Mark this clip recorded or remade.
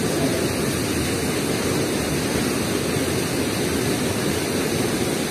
recorded